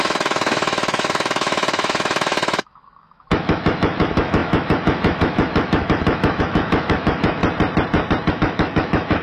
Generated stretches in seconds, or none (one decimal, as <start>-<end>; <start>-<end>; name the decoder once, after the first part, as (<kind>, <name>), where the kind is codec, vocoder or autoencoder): 0.0-7.4 (autoencoder, DAC-VAE); 8.3-9.2